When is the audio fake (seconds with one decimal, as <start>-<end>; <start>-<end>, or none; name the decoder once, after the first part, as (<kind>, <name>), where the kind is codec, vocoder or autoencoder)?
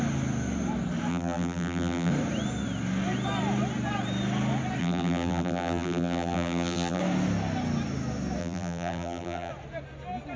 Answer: 1.1-2.1 (vocoder, BigVGAN v2); 4.8-7.0; 8.4-9.5